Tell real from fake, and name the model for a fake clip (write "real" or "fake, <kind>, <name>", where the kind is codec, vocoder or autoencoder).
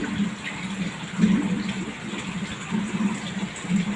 real